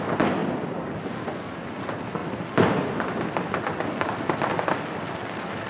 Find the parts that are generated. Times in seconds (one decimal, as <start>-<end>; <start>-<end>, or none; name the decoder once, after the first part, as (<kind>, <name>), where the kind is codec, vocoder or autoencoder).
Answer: none